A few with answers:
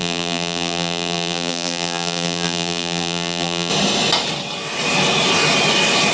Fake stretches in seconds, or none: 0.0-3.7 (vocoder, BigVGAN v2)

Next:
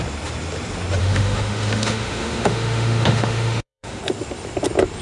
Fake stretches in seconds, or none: 1.0-4.0 (autoencoder, DAC-VAE)

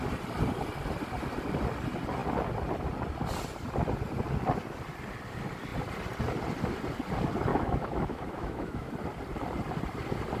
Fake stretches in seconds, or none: 7.5-8.9 (autoencoder, DAC-VAE)

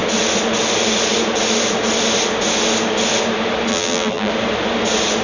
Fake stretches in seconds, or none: 3.7-4.3 (vocoder, BigVGAN v2)